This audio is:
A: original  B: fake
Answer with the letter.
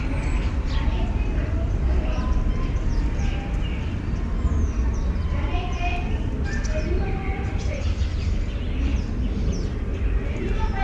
A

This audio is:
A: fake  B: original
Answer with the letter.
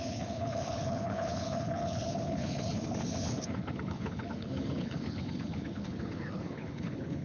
A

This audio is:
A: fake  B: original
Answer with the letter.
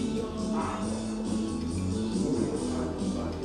B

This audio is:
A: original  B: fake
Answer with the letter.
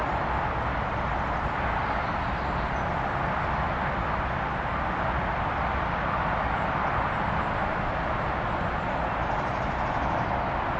A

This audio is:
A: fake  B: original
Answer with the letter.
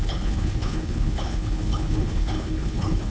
A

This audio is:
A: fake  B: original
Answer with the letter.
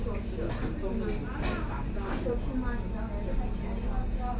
B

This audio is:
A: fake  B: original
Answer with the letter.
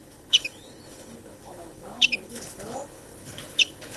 A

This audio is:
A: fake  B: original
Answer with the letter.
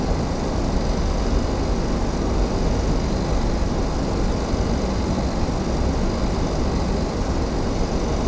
B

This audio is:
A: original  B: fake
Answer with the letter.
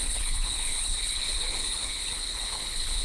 B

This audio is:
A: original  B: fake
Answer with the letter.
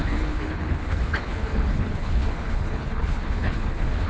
B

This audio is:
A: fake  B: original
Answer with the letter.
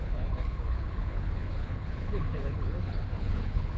A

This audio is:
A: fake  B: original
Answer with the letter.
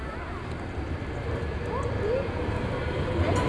B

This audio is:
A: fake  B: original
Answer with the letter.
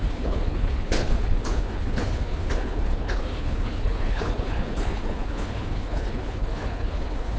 A